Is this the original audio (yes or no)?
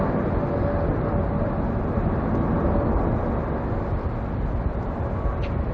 yes